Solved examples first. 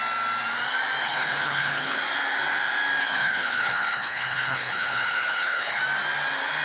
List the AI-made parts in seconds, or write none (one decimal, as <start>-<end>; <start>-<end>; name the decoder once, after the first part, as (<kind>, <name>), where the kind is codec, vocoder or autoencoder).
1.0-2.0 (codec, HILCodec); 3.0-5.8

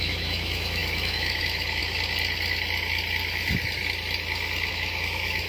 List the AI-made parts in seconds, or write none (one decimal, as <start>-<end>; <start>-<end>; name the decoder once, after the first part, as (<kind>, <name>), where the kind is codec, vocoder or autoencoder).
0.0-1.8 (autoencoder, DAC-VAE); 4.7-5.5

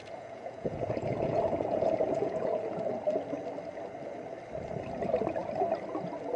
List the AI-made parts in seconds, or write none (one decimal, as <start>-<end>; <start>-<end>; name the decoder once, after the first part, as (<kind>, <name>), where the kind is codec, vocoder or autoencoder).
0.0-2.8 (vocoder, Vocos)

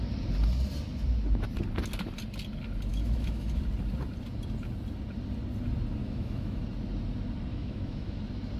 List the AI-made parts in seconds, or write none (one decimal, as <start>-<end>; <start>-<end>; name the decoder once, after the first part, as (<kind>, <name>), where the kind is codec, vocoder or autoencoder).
2.9-3.6 (autoencoder, DAC-VAE); 6.0-6.6; 7.5-8.2